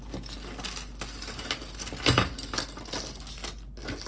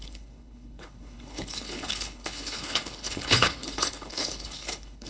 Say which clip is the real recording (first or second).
first